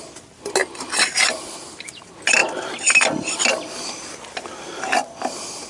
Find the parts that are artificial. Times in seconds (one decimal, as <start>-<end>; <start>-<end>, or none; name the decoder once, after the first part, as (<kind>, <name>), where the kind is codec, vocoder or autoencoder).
0.6-2.0 (vocoder, BigVGAN v2)